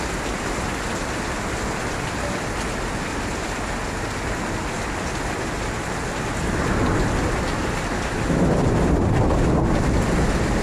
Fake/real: real